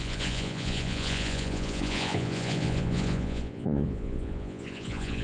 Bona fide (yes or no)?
no